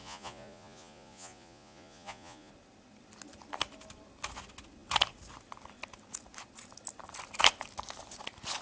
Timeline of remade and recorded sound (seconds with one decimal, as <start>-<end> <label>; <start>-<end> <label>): 0.0-2.5 remade; 2.5-8.6 recorded